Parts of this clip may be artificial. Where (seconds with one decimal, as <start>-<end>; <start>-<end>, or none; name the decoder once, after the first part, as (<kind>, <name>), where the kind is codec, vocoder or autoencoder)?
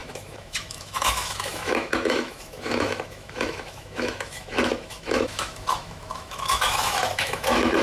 0.0-7.8 (autoencoder, DAC-VAE)